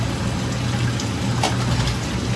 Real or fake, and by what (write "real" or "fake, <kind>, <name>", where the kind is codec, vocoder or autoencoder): real